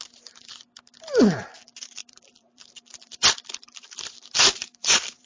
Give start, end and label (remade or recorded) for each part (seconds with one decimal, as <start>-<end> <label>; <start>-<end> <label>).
0.0-2.0 recorded; 2.0-5.3 remade